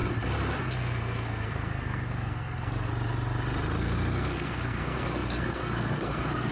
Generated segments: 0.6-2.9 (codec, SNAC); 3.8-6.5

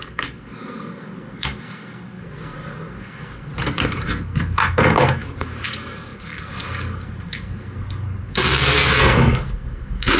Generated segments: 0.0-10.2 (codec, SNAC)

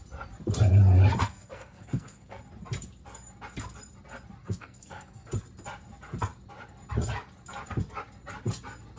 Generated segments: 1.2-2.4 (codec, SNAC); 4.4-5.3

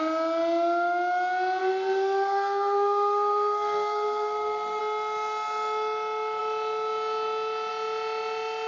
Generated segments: 1.6-4.8 (codec, SNAC)

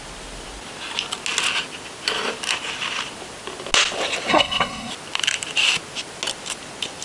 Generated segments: 4.3-4.9 (codec, SNAC)

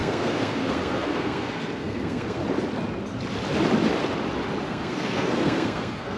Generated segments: 0.0-2.4 (codec, SNAC); 4.7-6.2

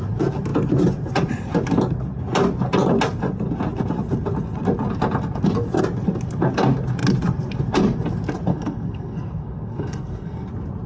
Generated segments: 8.5-10.5 (codec, SNAC)